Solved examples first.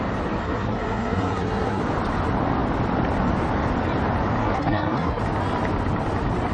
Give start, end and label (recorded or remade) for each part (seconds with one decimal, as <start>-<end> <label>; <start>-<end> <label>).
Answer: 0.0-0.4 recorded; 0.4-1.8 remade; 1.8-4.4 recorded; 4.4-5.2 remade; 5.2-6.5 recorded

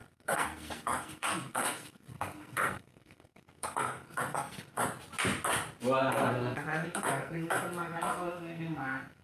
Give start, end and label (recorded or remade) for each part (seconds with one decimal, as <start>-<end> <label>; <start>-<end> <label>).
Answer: 0.0-4.8 remade; 4.8-6.1 recorded; 6.1-9.2 remade

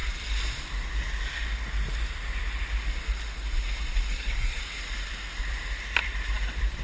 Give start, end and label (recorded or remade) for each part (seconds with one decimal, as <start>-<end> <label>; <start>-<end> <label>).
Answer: 0.0-4.1 recorded; 4.1-4.6 remade; 4.6-6.8 recorded

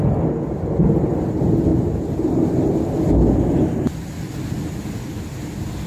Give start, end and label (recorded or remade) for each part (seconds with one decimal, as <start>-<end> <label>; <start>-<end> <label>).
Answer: 0.0-5.9 recorded